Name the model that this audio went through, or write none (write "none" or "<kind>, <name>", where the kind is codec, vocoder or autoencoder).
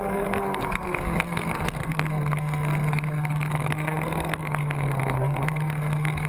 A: codec, SNAC